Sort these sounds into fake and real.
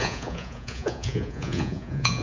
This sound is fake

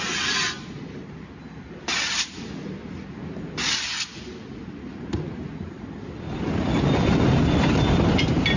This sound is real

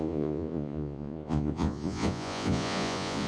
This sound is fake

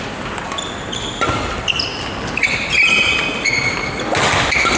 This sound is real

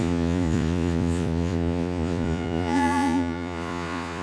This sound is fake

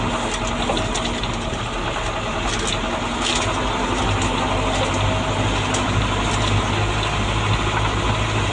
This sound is real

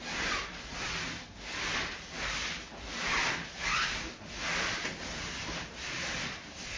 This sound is real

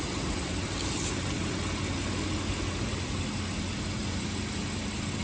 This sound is real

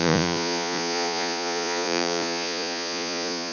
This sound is fake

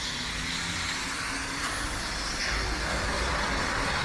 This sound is real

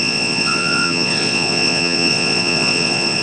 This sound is fake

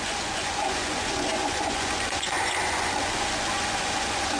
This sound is fake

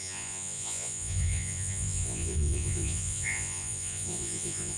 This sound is fake